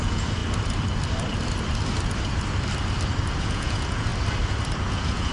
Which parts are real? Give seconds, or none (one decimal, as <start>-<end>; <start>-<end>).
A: 0.4-3.4; 4.1-4.8